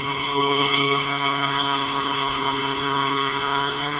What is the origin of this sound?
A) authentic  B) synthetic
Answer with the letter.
B